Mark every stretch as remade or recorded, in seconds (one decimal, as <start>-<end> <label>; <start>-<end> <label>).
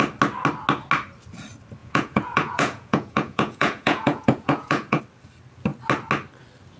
0.0-1.8 recorded; 1.8-5.0 remade; 5.0-6.8 recorded